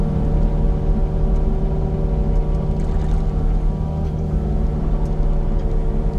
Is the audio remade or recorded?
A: recorded